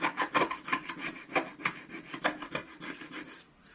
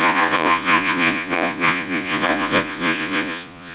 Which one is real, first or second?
first